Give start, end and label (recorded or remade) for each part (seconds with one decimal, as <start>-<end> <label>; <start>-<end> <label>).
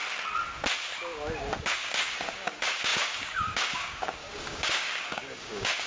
0.0-1.6 recorded; 1.6-5.9 remade